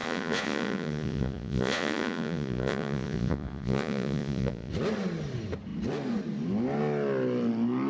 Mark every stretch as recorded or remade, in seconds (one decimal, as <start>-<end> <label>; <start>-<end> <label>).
0.0-4.7 remade; 4.7-7.9 recorded